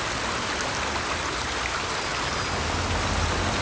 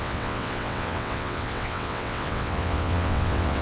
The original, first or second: first